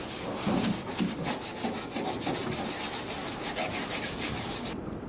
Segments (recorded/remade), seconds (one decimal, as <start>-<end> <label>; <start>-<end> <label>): 0.0-5.1 recorded